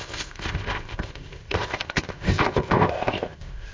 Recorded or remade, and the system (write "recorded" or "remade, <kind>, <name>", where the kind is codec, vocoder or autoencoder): remade, codec, ZipCodec